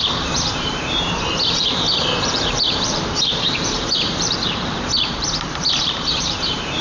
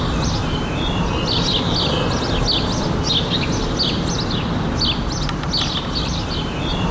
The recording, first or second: second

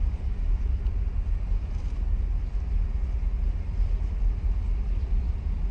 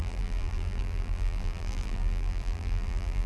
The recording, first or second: first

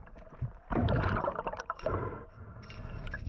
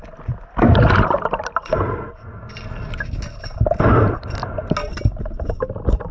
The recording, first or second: second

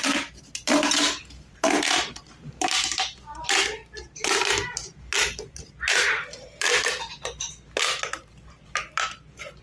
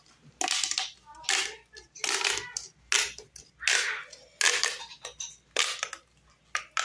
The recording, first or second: second